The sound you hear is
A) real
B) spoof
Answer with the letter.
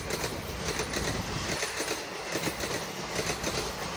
A